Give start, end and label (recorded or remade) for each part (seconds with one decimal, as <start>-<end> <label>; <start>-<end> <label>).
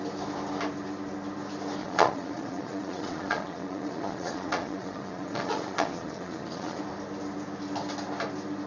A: 0.0-1.8 recorded; 1.8-6.8 remade; 6.8-8.7 recorded